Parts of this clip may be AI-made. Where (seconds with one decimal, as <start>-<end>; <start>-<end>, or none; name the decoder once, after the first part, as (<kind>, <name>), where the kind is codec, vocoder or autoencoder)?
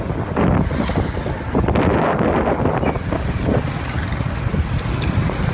none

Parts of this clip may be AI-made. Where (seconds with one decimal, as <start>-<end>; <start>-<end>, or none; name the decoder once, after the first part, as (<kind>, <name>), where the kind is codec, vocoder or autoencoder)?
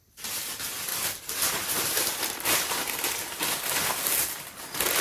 0.9-3.9 (vocoder, BigVGAN v2)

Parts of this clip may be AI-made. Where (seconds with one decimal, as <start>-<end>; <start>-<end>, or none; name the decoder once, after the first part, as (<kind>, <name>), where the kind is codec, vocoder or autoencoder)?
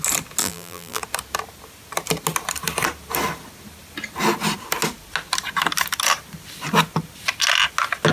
0.4-1.0 (vocoder, BigVGAN v2)